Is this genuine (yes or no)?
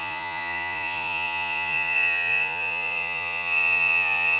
no